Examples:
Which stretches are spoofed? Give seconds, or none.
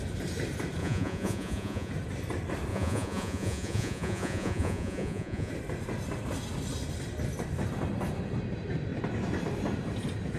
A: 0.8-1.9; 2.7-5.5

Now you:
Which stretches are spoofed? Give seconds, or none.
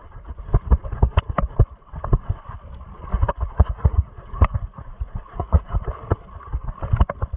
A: 3.1-5.8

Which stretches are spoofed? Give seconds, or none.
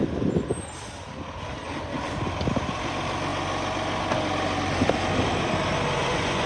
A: 6.0-6.5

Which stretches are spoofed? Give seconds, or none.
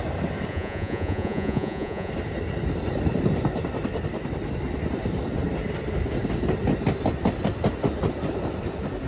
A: 0.5-2.1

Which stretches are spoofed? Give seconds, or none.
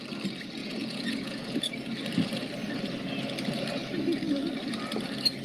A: 0.6-1.7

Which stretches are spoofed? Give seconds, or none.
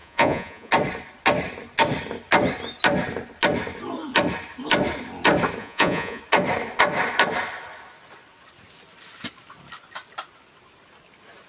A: 0.0-0.7; 5.6-6.2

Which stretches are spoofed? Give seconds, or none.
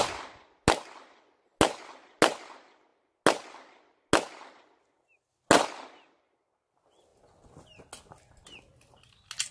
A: none